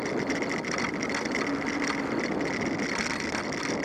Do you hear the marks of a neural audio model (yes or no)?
no